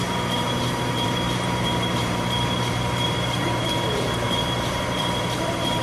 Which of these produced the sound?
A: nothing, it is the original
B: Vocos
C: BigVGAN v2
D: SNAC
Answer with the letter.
C